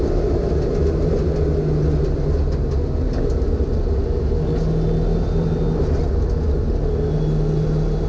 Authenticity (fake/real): real